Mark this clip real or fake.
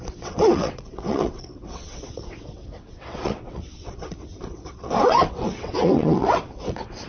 fake